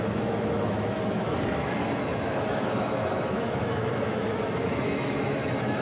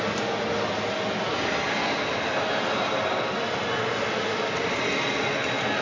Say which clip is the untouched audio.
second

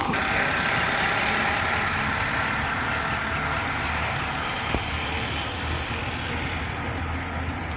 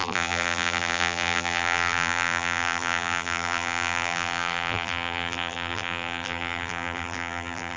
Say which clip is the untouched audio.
first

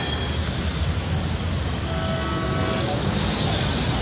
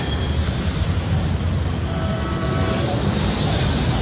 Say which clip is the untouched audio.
first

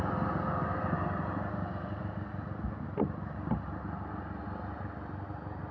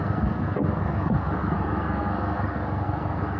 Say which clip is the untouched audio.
first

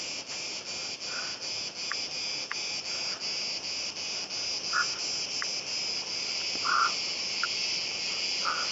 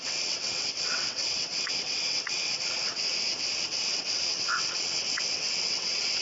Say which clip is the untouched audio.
first